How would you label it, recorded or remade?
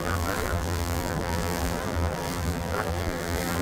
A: remade